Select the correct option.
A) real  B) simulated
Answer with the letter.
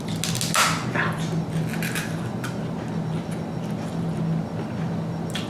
A